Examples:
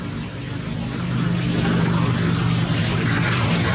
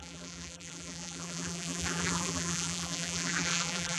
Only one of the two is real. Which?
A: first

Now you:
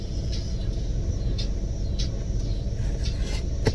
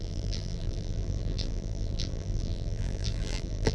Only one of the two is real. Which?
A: first